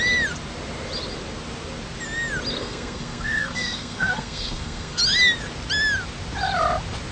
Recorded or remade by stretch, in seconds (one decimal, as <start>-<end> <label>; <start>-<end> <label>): 0.0-2.6 recorded; 2.6-5.0 remade; 5.0-7.1 recorded